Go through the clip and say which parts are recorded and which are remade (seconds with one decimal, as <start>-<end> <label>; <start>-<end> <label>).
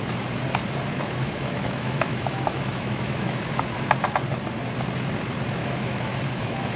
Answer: 0.0-0.9 recorded; 0.9-3.4 remade; 3.4-5.6 recorded; 5.6-6.8 remade